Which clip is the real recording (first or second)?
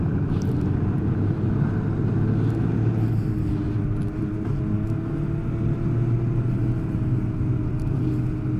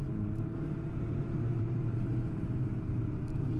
first